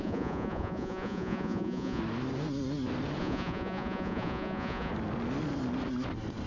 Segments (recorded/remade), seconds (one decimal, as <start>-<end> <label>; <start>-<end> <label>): 0.0-2.0 remade; 2.0-3.2 recorded; 3.2-4.9 remade; 4.9-6.5 recorded